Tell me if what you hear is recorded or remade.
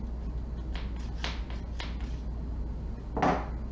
recorded